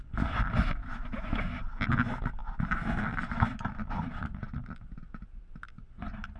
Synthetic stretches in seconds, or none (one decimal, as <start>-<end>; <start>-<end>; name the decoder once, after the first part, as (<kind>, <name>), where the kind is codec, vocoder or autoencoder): 0.8-1.4 (autoencoder, DAC-VAE)